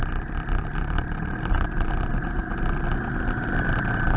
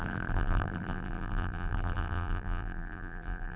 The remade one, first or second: second